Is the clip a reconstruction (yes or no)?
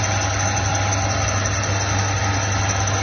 no